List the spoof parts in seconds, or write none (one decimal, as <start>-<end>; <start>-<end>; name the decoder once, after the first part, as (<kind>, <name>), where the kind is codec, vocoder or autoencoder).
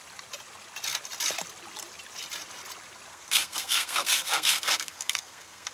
3.1-5.7 (codec, SNAC)